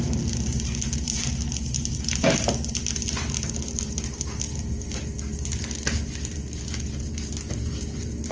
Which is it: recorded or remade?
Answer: remade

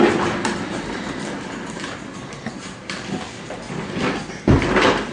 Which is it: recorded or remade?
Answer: remade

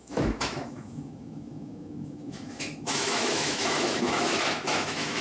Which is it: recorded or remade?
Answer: remade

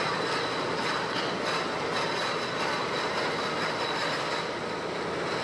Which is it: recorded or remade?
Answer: recorded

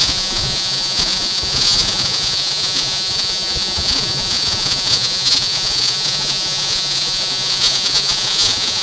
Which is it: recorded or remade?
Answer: remade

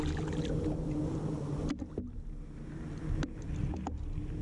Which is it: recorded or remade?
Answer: recorded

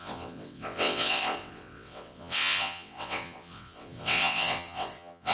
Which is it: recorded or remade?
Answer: remade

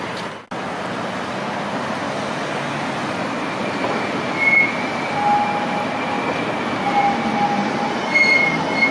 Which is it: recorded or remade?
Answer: recorded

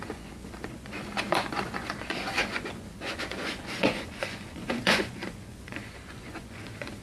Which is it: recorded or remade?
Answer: remade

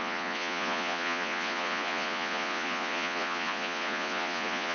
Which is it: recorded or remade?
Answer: remade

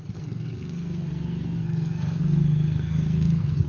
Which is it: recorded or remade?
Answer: remade